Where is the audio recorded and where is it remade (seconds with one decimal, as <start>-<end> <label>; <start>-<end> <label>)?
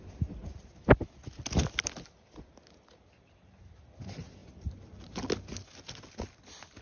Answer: 0.0-6.8 recorded